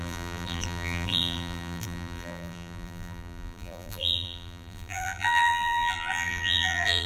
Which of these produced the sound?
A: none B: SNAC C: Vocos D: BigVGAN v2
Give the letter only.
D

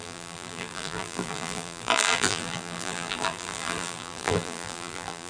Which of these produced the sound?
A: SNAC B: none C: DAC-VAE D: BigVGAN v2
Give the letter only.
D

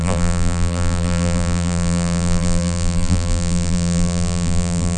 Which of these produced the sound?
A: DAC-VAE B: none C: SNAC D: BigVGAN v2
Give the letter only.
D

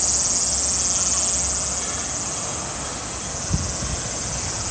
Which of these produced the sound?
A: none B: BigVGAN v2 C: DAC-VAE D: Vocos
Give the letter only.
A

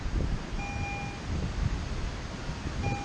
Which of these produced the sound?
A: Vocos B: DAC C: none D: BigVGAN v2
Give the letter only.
C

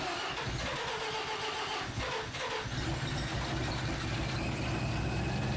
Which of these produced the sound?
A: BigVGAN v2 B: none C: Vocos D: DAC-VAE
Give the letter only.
B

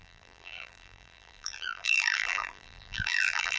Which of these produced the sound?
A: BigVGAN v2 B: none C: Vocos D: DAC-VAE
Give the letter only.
A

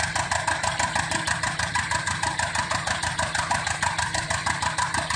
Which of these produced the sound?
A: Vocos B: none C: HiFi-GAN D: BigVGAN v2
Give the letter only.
D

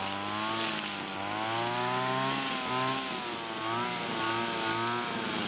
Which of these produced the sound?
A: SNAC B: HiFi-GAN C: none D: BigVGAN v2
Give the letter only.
C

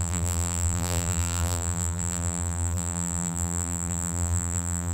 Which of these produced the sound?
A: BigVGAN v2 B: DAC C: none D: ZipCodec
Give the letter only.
A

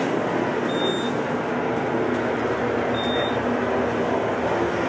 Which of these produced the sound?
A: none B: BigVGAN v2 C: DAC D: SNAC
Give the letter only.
A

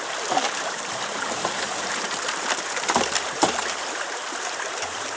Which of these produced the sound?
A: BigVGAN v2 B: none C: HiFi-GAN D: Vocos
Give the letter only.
A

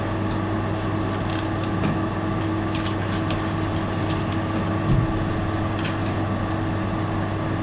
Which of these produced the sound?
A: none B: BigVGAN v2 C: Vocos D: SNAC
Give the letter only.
A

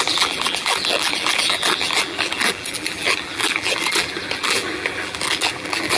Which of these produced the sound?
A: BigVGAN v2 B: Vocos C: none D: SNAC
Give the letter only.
A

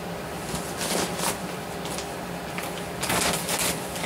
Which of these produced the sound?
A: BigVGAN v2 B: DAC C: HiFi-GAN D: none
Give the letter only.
D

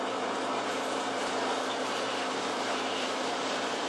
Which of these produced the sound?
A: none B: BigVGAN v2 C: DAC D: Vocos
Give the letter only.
B